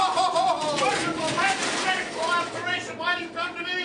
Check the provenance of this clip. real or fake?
real